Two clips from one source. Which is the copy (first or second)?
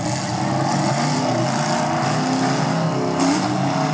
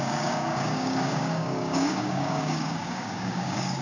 second